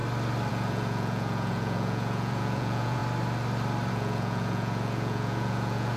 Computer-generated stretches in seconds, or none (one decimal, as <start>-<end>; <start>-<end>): 0.5-3.0; 3.9-6.0